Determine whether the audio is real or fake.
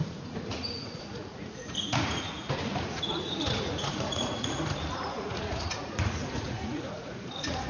fake